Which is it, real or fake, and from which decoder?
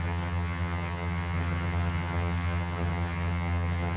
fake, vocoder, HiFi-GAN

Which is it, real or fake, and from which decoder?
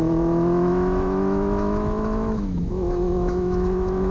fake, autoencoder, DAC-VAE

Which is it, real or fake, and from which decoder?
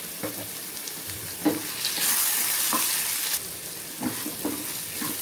real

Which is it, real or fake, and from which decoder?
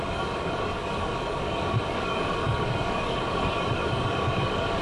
fake, codec, DAC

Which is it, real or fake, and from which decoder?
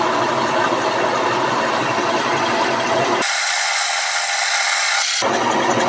real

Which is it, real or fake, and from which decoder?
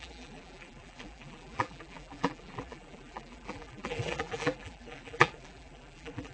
fake, vocoder, BigVGAN v2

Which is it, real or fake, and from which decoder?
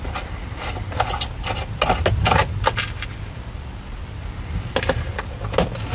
real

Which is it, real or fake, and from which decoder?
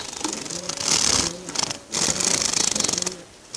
real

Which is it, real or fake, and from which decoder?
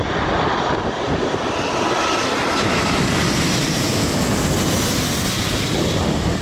real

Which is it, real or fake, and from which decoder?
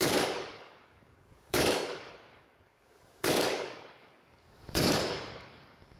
fake, codec, DAC